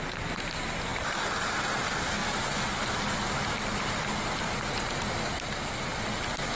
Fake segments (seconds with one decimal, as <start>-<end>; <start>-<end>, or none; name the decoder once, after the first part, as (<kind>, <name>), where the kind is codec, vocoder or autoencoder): none